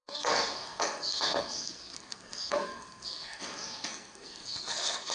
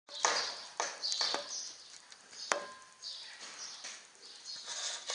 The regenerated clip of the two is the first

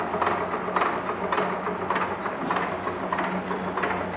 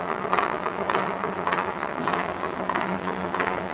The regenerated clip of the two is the second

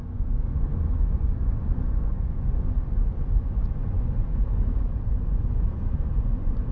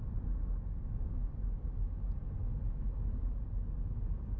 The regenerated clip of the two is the first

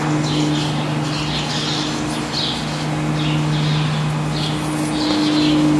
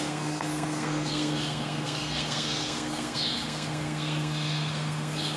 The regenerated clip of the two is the second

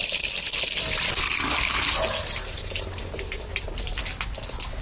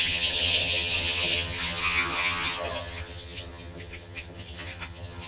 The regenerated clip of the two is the second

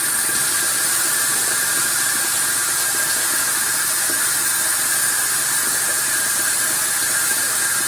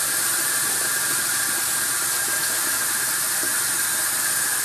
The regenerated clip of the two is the second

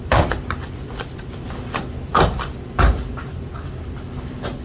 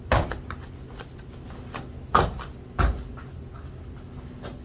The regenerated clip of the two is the first